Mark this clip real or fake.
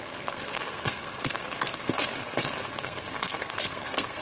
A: fake